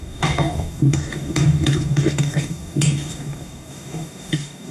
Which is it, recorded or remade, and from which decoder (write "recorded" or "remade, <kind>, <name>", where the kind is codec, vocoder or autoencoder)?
remade, codec, DAC